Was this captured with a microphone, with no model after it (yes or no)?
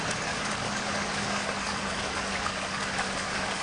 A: no